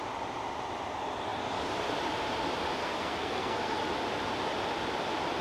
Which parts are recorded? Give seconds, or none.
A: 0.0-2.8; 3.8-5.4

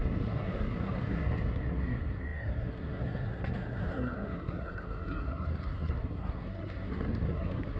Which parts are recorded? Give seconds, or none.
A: none

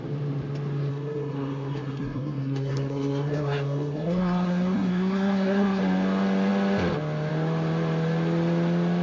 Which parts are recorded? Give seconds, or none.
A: 0.0-0.9; 5.8-9.0

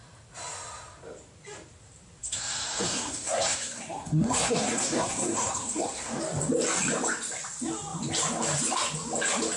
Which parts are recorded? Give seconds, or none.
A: 0.0-2.2; 6.2-9.6